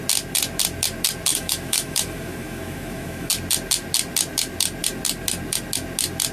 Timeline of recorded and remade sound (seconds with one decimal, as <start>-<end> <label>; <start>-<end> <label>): 0.0-1.3 recorded; 1.3-3.3 remade; 3.3-6.3 recorded